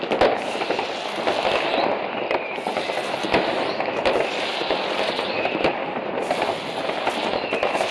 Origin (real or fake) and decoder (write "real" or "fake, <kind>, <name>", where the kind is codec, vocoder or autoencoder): real